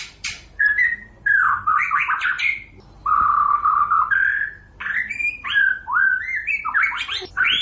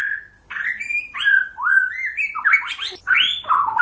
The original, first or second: second